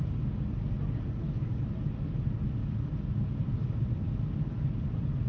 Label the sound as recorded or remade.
recorded